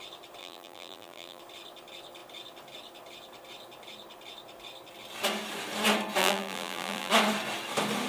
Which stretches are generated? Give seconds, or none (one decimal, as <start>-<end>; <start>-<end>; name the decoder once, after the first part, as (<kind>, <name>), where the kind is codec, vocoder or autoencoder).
0.4-1.4 (vocoder, BigVGAN v2); 6.2-7.1